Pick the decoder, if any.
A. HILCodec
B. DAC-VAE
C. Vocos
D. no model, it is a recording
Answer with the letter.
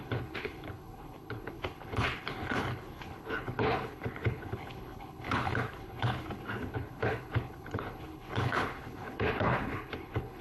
A